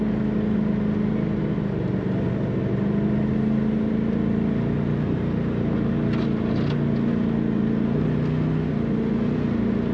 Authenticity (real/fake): real